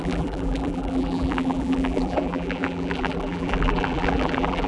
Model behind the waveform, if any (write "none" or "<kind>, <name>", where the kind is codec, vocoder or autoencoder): vocoder, BigVGAN v2